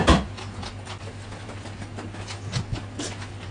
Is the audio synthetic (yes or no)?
no